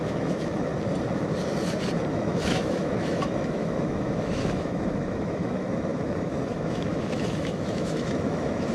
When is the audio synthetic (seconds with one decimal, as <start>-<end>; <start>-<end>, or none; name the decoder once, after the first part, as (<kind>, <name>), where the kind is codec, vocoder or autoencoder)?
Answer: 0.0-0.7 (autoencoder, DAC-VAE); 2.1-8.7